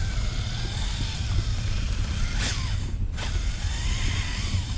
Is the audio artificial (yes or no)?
no